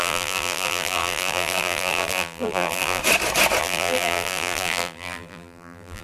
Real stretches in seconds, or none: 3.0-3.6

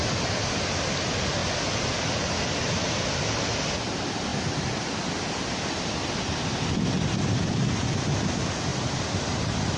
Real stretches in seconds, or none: 0.0-4.3; 6.6-8.7; 9.2-9.8

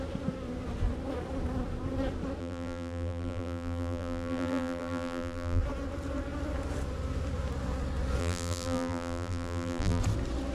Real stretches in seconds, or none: 0.0-2.4; 5.6-8.2; 10.0-10.5